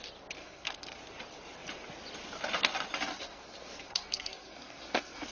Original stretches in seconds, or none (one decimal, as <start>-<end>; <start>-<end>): 0.0-0.4; 1.0-3.1